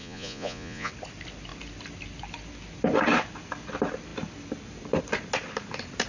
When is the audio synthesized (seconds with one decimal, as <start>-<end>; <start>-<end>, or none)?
0.0-0.9